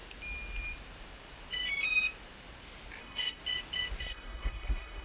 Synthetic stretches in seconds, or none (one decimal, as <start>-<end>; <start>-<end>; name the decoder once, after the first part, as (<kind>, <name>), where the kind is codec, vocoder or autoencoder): 3.0-3.4 (codec, SNAC); 4.0-5.0